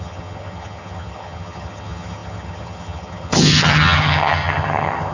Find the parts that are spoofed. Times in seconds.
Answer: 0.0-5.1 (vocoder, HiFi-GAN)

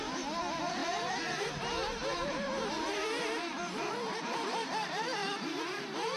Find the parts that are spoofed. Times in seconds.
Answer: 2.0-2.7 (vocoder, BigVGAN v2); 3.5-6.2

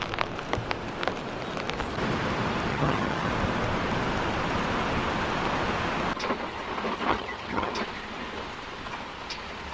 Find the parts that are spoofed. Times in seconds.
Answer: 2.7-3.3 (vocoder, HiFi-GAN); 7.1-7.7

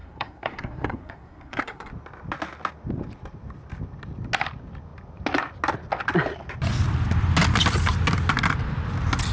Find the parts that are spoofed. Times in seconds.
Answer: 0.0-1.9 (codec, SNAC)

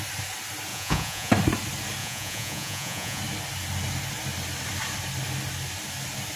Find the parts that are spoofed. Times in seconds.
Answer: 0.7-1.3 (vocoder, Vocos); 2.0-3.2

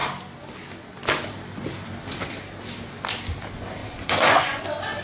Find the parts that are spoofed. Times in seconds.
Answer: 3.8-4.6 (vocoder, Vocos)

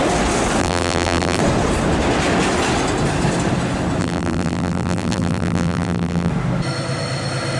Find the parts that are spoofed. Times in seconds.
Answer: 0.6-1.4 (vocoder, BigVGAN v2); 4.0-6.3